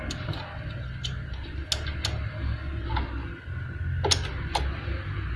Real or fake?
real